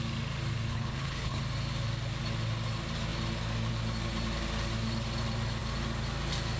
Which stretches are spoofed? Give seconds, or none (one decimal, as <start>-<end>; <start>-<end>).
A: 0.7-1.4